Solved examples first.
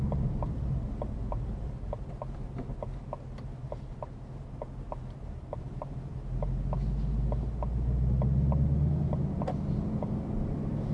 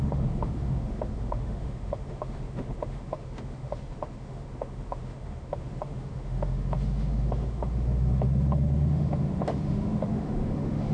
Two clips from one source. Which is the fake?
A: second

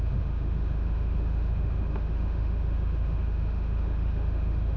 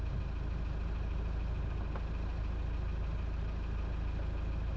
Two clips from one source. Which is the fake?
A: first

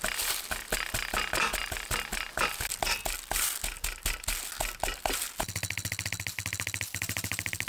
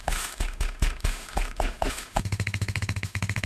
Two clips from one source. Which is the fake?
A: second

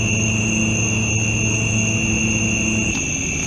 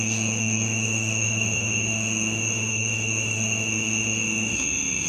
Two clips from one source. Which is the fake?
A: second